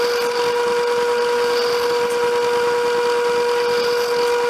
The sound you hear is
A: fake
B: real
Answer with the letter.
B